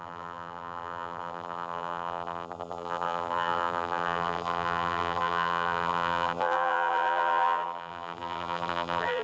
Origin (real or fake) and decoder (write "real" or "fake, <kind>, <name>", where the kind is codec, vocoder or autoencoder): fake, vocoder, BigVGAN v2